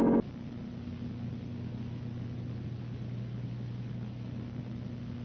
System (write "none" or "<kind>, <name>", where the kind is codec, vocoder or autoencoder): none